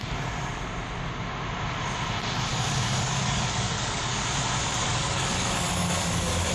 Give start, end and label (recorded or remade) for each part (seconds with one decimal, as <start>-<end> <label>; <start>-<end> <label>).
0.0-2.5 recorded; 2.5-4.2 remade; 4.2-4.8 recorded; 4.8-6.5 remade